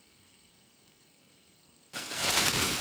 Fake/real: fake